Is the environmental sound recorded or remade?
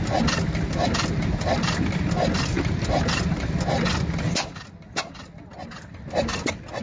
recorded